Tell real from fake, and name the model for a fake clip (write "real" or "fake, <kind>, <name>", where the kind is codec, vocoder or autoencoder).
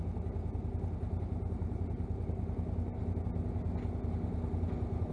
real